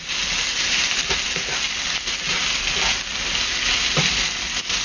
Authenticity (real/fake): real